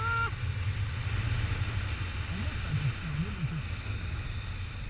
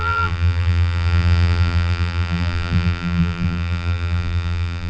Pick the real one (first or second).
first